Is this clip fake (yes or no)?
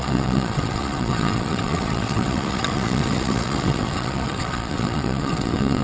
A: yes